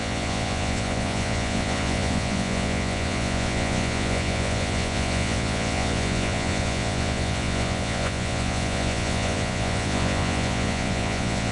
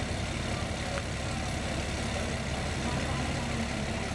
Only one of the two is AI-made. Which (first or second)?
first